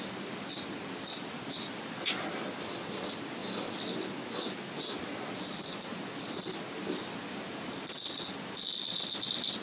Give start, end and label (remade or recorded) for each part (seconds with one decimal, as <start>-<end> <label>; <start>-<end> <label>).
0.0-9.6 recorded